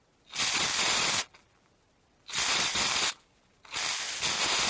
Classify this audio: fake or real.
real